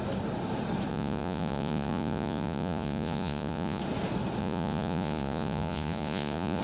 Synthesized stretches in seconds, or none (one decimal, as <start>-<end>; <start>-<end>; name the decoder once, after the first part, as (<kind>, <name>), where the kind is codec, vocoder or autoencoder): 0.9-3.8 (vocoder, Vocos); 4.4-6.6